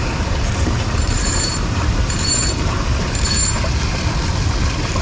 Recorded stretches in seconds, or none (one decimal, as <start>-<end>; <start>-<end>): 3.4-5.0